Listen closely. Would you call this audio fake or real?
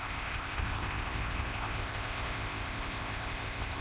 fake